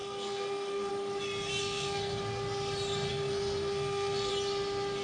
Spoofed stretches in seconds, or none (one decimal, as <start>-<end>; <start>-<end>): 0.0-0.9; 1.6-2.2; 3.1-4.3